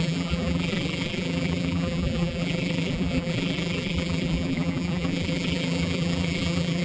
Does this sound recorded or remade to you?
remade